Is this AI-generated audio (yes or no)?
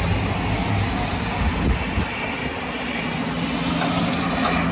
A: no